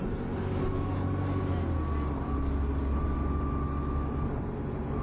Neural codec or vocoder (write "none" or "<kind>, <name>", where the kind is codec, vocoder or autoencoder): none